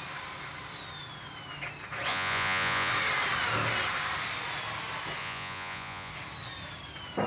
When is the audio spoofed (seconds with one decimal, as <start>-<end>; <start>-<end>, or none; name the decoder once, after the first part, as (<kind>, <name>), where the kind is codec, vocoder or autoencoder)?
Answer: 2.1-2.9 (vocoder, Vocos); 5.2-6.1